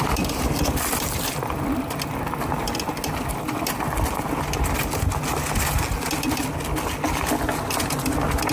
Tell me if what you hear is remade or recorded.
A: recorded